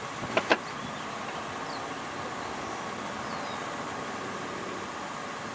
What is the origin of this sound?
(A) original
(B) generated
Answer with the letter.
A